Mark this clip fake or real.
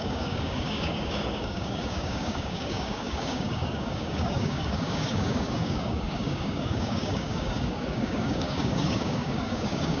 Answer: fake